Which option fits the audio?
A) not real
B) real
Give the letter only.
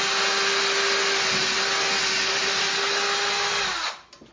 B